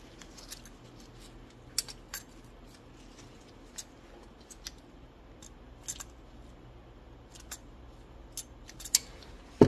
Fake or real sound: real